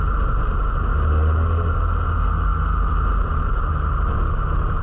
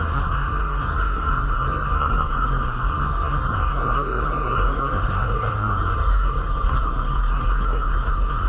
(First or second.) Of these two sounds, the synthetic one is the second